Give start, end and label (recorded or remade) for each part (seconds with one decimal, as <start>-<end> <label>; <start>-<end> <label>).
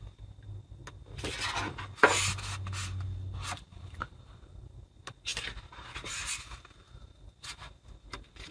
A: 0.0-3.7 recorded; 3.7-4.6 remade; 4.6-5.3 recorded; 5.3-8.5 remade